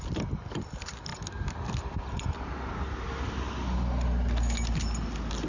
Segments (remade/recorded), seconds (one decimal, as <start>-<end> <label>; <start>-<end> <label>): 0.0-5.5 recorded